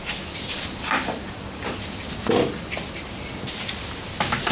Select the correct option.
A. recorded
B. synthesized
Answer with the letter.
A